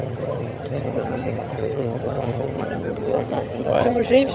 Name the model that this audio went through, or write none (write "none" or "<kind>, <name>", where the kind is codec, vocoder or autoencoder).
vocoder, HiFi-GAN